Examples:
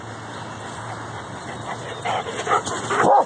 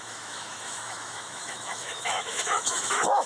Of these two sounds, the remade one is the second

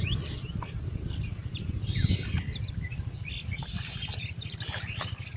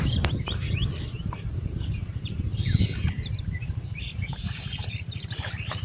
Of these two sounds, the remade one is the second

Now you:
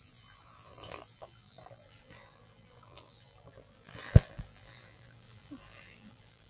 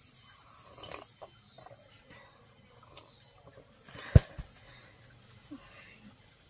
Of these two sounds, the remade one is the first